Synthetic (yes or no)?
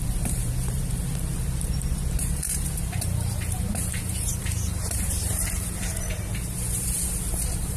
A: yes